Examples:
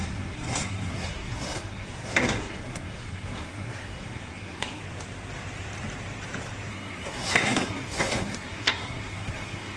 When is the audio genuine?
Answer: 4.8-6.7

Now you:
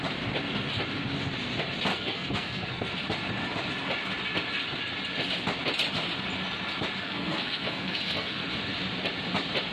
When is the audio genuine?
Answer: 0.0-1.9; 2.9-7.0; 8.4-9.7

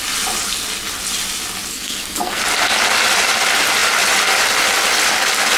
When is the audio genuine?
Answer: 0.0-1.7; 2.4-5.6

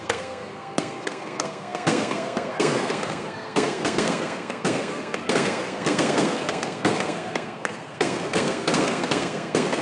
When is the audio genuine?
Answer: none

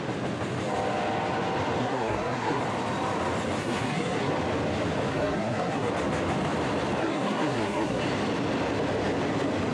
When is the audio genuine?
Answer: 0.0-1.8; 2.6-3.6; 4.3-5.1; 5.9-7.0; 8.0-9.7

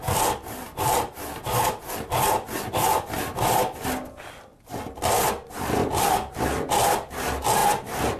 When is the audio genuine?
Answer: 0.0-8.2

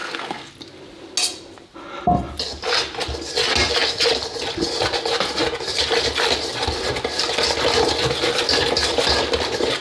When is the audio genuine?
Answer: 0.5-9.8